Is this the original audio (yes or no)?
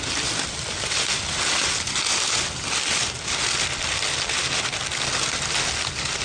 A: yes